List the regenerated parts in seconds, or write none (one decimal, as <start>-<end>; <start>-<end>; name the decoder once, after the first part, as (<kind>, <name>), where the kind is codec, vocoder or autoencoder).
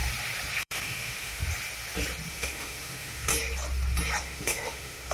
0.6-1.4 (autoencoder, DAC-VAE); 2.3-3.3; 4.2-5.1